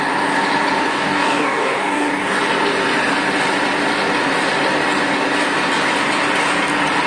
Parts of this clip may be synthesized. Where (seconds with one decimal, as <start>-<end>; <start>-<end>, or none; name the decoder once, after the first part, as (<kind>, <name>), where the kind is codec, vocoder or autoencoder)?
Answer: 0.9-2.4 (codec, DAC)